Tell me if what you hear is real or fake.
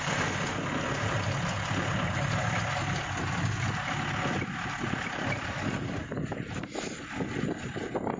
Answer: real